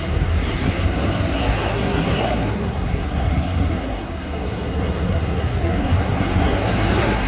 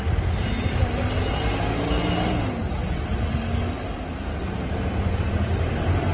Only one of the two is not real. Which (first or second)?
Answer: first